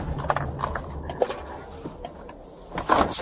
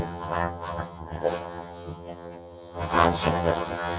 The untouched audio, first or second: first